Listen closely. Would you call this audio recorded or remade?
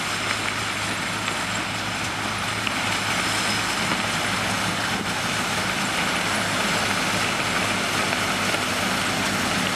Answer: recorded